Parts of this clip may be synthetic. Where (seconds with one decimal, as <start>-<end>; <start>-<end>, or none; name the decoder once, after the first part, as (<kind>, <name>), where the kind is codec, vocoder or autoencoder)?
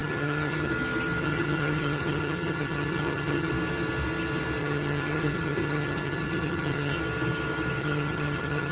0.0-0.7 (vocoder, HiFi-GAN); 1.2-3.5; 4.6-7.0; 7.8-8.7